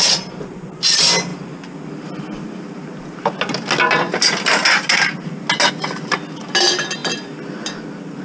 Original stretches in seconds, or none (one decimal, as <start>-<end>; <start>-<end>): 0.0-8.2